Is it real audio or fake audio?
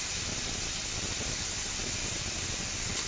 real